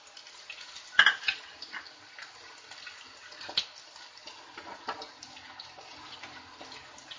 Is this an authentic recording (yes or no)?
yes